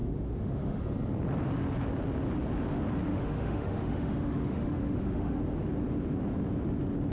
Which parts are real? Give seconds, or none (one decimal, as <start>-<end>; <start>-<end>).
0.8-3.1; 5.4-7.1